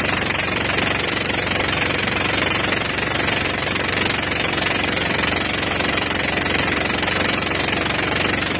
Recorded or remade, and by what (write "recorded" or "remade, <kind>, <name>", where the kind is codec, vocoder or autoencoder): recorded